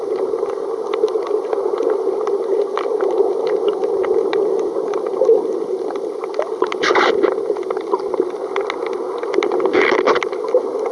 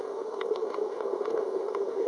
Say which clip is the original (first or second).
first